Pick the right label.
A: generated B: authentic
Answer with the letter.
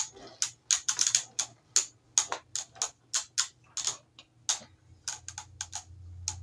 B